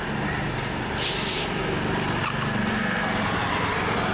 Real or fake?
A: real